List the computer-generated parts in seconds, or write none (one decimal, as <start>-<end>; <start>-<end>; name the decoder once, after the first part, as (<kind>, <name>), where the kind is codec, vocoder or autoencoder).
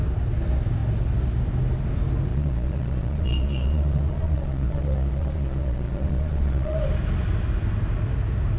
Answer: 2.3-6.8 (vocoder, Vocos)